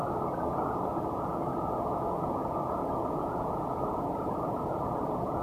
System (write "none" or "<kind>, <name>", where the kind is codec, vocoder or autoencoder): vocoder, Vocos